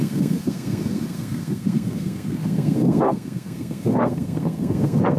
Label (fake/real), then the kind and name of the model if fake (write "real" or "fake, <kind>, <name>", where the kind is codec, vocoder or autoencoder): fake, codec, SNAC